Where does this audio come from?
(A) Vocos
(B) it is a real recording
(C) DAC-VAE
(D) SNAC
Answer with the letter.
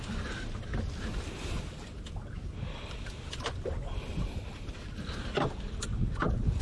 B